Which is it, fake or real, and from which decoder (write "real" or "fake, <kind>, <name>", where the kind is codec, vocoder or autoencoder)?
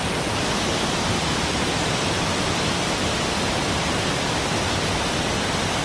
real